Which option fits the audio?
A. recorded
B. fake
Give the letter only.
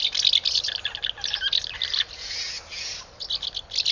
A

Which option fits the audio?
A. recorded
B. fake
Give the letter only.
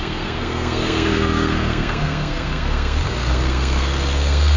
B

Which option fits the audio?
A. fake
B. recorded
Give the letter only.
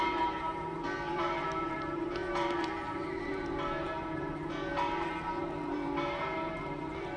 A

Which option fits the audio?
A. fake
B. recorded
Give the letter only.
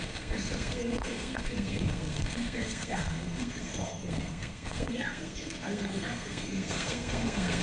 A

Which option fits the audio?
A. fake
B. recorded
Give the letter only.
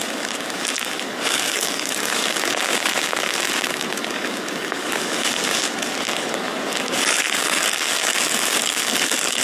A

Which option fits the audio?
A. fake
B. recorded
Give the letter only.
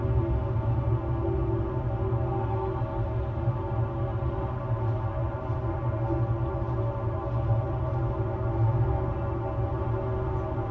B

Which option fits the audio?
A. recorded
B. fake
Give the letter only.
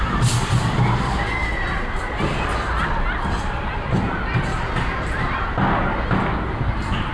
A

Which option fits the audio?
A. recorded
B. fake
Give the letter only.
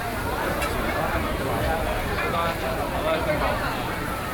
B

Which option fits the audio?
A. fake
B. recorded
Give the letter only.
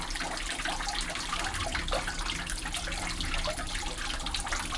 B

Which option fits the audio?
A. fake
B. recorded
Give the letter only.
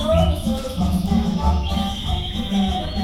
A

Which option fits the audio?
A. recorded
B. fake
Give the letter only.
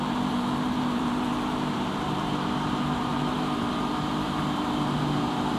B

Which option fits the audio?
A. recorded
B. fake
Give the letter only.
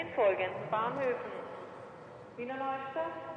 A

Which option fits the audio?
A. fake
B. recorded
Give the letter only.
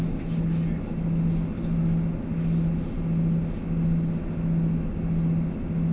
B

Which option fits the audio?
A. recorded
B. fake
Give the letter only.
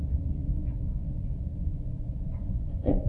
B